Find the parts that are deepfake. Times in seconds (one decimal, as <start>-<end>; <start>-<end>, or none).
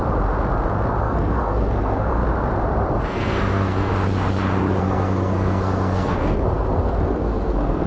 1.0-2.2; 3.0-3.9; 4.8-7.9